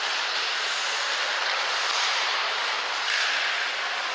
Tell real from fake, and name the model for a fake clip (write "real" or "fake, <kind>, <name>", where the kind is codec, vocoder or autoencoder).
real